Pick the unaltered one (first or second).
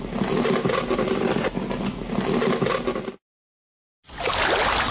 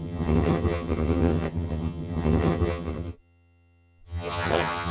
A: first